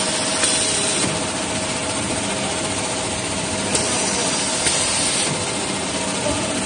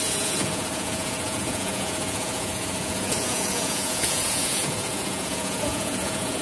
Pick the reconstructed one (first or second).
second